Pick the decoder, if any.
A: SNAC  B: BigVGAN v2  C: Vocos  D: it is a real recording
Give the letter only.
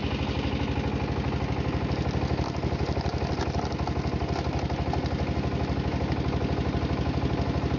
D